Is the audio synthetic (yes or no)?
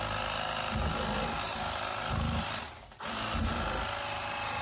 no